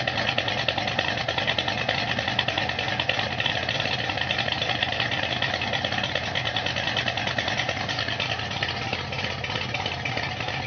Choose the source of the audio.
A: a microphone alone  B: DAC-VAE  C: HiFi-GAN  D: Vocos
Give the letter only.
A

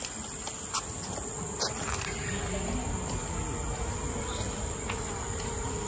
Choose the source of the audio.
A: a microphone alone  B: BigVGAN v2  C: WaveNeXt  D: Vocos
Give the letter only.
A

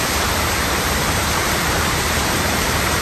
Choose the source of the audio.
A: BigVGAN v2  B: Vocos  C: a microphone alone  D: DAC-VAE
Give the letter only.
A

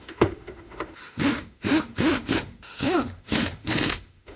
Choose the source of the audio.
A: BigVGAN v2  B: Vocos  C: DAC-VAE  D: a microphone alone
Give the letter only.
C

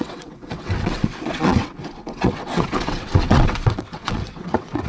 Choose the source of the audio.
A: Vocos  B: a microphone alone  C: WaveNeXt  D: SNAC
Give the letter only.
C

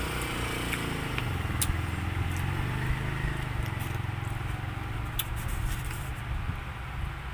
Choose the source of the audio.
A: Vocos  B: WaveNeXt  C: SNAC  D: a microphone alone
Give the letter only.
D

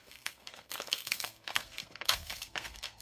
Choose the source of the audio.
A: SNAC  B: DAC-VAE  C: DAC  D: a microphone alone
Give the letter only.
A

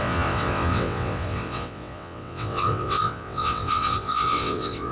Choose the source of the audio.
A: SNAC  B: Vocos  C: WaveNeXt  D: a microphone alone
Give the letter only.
C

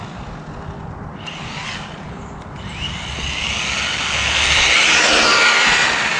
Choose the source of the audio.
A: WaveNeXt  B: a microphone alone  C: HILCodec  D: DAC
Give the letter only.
B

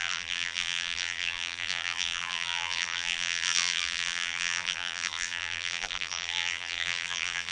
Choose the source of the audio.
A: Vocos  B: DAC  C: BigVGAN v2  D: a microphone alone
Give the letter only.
C